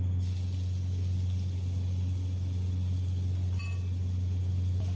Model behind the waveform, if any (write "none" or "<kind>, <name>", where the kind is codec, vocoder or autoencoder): none